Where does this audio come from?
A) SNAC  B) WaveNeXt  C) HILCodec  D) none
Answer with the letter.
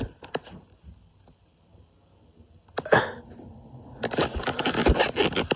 D